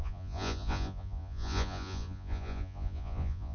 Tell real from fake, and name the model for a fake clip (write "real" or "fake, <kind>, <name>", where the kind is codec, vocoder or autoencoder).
fake, vocoder, Vocos